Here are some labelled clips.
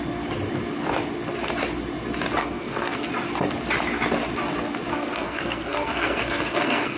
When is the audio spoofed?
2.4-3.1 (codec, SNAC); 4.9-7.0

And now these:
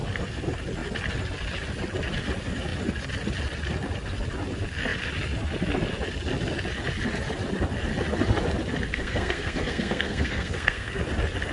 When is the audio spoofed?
8.9-11.0 (codec, SNAC)

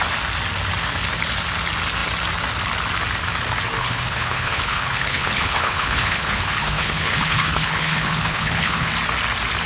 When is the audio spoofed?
3.8-8.9 (codec, HILCodec)

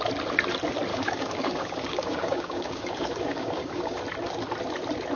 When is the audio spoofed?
0.9-4.0 (codec, DAC)

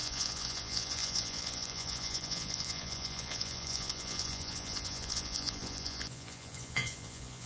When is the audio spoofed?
0.0-7.5 (vocoder, Vocos)

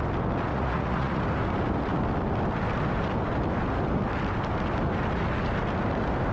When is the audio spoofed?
0.5-1.2 (vocoder, Vocos)

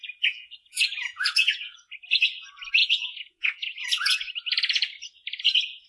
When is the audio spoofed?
0.0-1.8 (vocoder, Vocos); 2.8-4.3